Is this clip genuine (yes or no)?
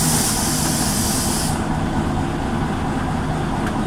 yes